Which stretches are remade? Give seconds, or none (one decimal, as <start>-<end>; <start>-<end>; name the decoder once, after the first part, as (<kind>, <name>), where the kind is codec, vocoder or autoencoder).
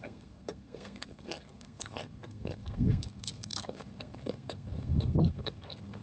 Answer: 0.0-6.0 (codec, SNAC)